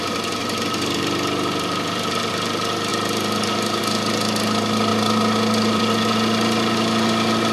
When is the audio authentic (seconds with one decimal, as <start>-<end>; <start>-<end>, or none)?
0.0-0.4; 2.3-4.9; 5.8-7.5